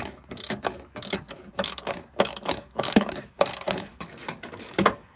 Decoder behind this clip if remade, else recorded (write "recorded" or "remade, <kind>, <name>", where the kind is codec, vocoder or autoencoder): remade, codec, DAC